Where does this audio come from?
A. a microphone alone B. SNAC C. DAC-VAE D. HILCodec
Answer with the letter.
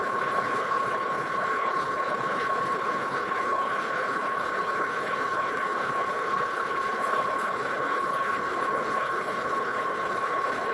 D